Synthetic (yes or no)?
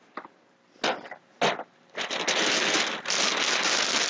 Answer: no